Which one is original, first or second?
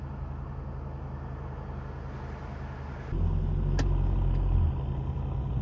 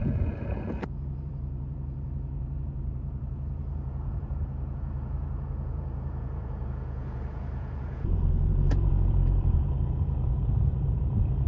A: first